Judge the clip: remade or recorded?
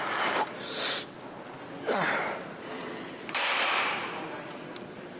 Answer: remade